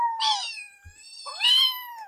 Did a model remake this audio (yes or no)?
no